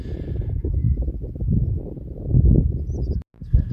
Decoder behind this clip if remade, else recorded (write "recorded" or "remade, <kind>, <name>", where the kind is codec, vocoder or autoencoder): recorded